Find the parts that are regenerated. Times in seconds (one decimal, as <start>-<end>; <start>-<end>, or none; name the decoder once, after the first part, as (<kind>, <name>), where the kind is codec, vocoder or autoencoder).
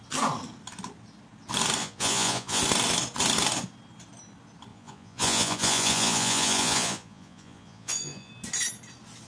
1.8-2.6 (vocoder, Vocos); 4.7-8.3